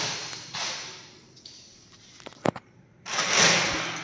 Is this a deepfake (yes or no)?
no